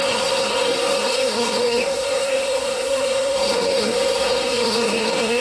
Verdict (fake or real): fake